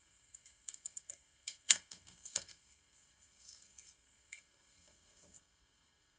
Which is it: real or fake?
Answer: fake